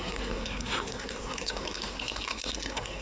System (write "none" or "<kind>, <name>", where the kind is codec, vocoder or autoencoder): codec, SNAC